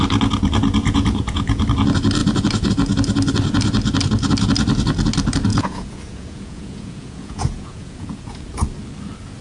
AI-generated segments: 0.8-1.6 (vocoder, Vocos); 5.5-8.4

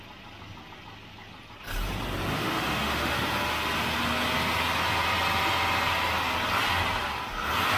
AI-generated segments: 2.3-3.1 (autoencoder, DAC-VAE)

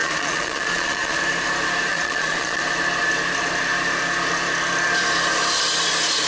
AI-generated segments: 0.0-1.2 (vocoder, Vocos); 1.9-2.6

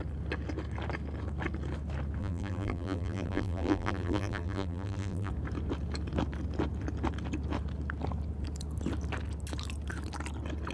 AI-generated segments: 2.2-5.3 (vocoder, BigVGAN v2)

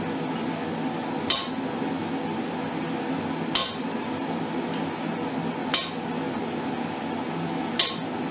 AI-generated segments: 3.6-4.4 (vocoder, BigVGAN v2)

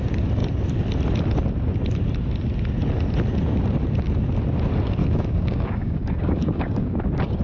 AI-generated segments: 5.0-7.0 (codec, DAC)